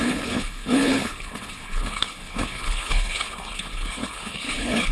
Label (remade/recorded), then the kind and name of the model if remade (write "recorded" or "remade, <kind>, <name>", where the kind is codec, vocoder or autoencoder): remade, codec, HILCodec